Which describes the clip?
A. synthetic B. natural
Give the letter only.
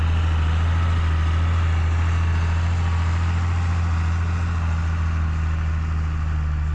B